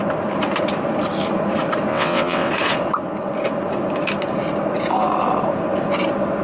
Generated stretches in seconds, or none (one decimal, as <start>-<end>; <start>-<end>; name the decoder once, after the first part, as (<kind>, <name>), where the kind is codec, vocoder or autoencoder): 1.9-2.5 (vocoder, WaveNeXt)